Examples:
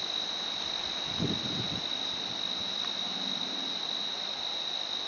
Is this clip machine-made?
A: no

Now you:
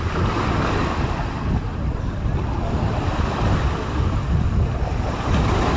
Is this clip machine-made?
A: no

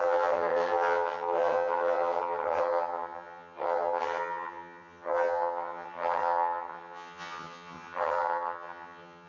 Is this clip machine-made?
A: yes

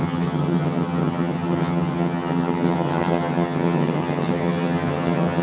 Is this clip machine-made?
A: yes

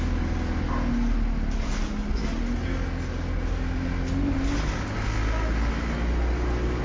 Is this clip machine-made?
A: no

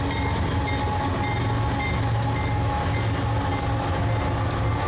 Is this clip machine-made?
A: no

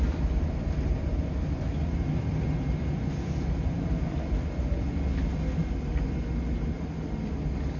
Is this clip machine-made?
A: no